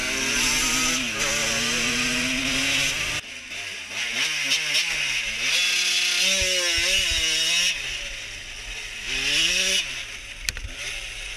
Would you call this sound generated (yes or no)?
no